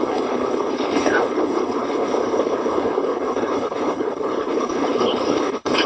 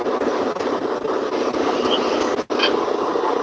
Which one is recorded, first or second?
second